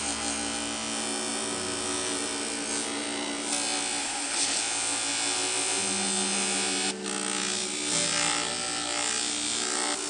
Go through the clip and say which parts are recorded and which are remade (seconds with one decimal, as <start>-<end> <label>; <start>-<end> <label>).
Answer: 0.0-4.0 recorded; 4.0-4.6 remade; 4.6-10.1 recorded